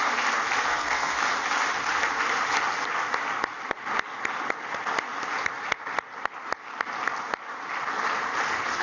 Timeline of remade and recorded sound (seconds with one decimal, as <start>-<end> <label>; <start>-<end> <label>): 0.0-0.7 recorded; 0.7-1.2 remade; 1.2-8.8 recorded

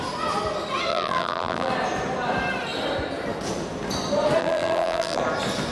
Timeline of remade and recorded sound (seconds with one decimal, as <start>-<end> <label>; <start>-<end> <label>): 0.0-0.9 recorded; 0.9-1.7 remade; 1.7-4.4 recorded; 4.4-5.2 remade; 5.2-5.7 recorded

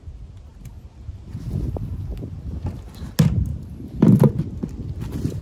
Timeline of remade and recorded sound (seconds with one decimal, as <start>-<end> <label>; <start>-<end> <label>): 0.0-3.5 recorded; 3.5-4.3 remade; 4.3-5.4 recorded

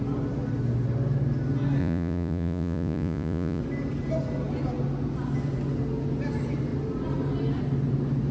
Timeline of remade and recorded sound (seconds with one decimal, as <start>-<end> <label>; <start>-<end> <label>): 0.0-1.8 recorded; 1.8-3.6 remade; 3.6-8.3 recorded

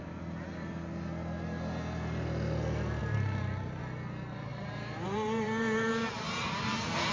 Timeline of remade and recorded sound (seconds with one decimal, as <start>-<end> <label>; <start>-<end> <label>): 0.0-3.0 recorded; 3.0-3.8 remade; 3.8-4.5 recorded; 4.5-7.1 remade

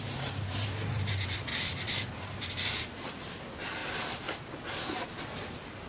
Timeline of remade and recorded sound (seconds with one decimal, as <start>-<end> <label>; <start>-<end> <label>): 0.0-5.9 recorded

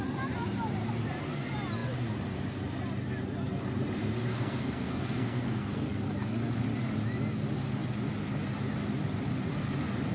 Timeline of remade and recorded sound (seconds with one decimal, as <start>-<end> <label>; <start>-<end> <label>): 0.0-4.3 recorded; 4.3-5.9 remade; 5.9-10.1 recorded